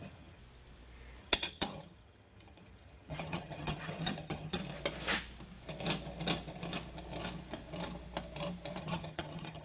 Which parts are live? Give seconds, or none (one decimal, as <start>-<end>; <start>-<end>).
0.4-1.2; 4.6-8.8